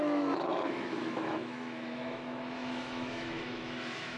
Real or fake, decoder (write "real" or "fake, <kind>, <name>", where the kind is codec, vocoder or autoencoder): fake, autoencoder, DAC-VAE